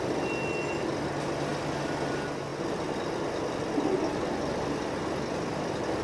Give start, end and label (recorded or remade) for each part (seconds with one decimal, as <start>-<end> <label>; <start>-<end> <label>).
0.0-6.0 recorded

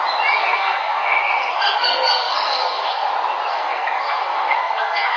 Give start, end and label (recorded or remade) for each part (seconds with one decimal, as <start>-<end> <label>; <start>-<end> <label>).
0.0-0.4 recorded; 0.4-3.1 remade; 3.1-3.5 recorded; 3.5-5.2 remade

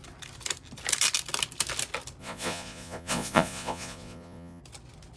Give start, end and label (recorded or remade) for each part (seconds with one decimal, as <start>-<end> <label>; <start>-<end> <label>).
0.0-2.2 recorded; 2.2-4.6 remade; 4.6-5.2 recorded